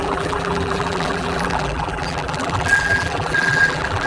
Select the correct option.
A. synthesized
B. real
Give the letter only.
A